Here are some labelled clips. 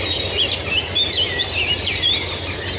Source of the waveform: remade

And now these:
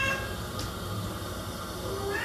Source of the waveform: recorded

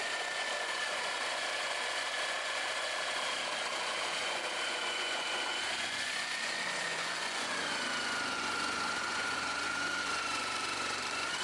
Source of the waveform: remade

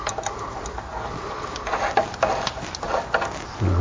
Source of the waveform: recorded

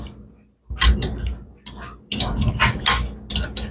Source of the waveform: recorded